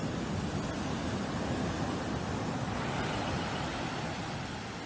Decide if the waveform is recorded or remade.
recorded